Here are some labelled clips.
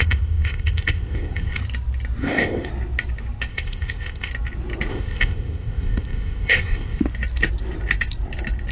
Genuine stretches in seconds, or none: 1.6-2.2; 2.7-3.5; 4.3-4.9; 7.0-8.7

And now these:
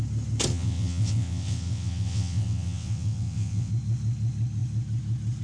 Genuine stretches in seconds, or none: 0.0-0.5; 3.7-5.4

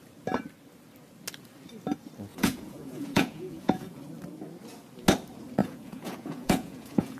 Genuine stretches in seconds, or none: 0.0-2.3; 4.0-5.6

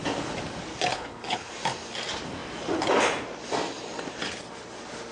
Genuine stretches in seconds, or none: 0.0-0.9; 1.5-5.1

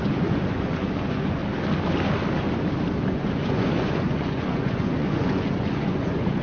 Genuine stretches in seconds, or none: 1.4-3.1

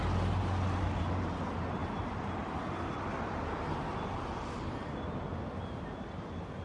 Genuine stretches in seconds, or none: 0.0-1.8; 2.6-3.9

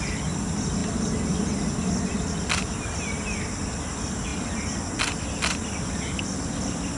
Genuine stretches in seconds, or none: 0.0-7.0

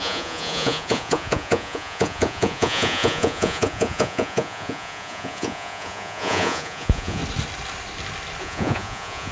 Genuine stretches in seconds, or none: 7.2-8.4